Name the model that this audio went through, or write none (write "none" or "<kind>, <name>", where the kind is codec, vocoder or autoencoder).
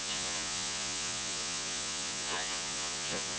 vocoder, Vocos